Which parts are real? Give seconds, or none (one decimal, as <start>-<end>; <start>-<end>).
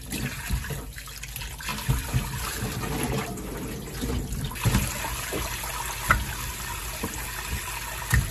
0.0-8.3